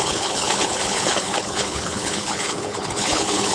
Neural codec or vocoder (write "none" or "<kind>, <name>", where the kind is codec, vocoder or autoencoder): codec, HILCodec